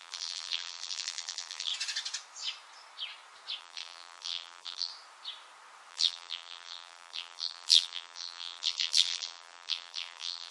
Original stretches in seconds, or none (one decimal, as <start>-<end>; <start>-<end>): 1.7-3.6; 4.9-5.9